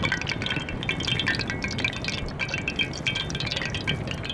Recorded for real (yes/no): yes